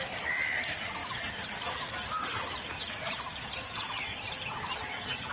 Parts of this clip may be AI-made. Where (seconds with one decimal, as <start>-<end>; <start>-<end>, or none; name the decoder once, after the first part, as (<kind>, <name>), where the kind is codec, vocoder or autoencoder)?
none